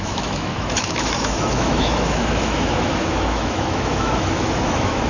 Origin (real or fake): fake